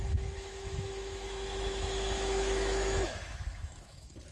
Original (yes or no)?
no